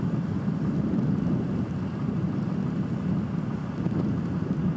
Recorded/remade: recorded